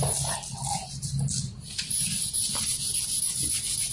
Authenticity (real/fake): real